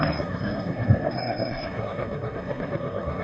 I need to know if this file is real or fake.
fake